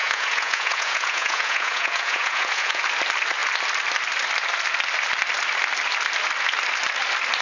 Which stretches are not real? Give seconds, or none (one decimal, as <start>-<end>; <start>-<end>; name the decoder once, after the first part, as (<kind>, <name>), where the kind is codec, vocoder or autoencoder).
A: 0.0-2.8 (vocoder, Vocos)